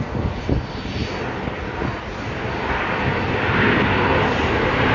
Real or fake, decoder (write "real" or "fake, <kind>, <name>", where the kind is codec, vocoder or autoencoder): real